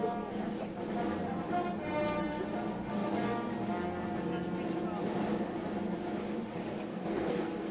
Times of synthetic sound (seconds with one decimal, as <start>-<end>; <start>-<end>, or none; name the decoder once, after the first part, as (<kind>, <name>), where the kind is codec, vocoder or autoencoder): 6.9-7.7 (codec, SNAC)